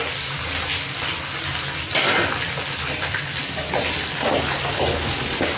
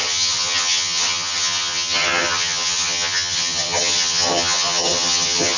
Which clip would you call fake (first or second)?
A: second